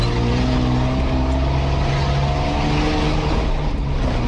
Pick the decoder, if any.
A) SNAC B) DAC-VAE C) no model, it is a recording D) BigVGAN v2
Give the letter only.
C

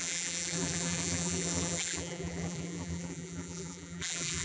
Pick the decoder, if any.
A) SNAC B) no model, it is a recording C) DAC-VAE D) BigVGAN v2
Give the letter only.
D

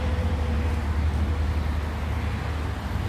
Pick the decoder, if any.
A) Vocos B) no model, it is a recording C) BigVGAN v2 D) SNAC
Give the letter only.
B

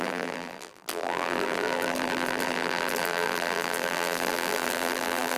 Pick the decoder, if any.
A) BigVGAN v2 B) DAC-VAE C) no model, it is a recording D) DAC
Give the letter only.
A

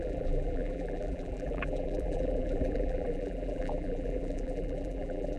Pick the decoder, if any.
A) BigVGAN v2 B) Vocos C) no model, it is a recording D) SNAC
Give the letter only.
A